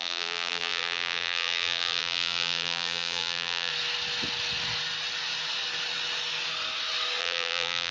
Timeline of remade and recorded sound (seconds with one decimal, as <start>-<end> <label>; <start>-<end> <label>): 0.0-3.7 remade; 3.7-7.2 recorded; 7.2-7.9 remade